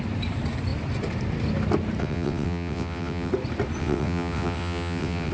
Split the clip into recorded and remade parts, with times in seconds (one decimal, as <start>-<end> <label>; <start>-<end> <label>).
0.0-2.0 recorded; 2.0-3.3 remade; 3.3-3.8 recorded; 3.8-5.3 remade